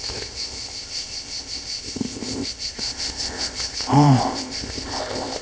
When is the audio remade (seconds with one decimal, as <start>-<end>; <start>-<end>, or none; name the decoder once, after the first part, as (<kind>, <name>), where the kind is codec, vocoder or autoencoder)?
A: 0.0-5.4 (codec, ZipCodec)